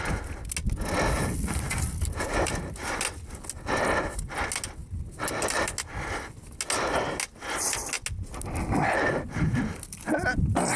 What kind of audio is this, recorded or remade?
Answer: recorded